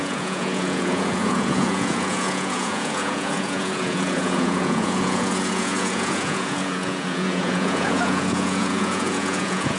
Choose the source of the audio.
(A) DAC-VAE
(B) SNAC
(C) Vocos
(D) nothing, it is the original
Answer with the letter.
C